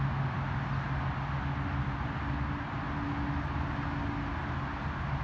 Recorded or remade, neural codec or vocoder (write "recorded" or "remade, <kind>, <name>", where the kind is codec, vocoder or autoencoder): recorded